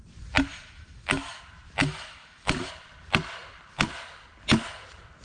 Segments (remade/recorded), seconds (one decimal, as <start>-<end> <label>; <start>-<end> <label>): 0.0-0.5 recorded; 0.5-1.4 remade; 1.4-1.8 recorded; 1.8-2.7 remade; 2.7-5.2 recorded